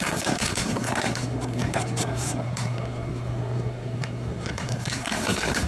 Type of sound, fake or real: fake